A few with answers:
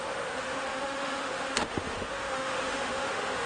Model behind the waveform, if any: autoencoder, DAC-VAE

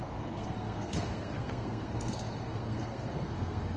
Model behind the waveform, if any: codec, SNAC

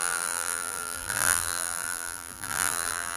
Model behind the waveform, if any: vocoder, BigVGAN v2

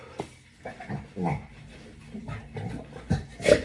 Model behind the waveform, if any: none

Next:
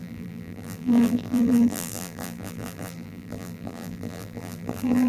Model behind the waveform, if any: vocoder, BigVGAN v2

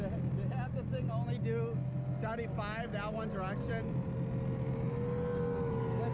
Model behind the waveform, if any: none